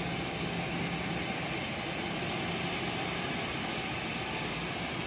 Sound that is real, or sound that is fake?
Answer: real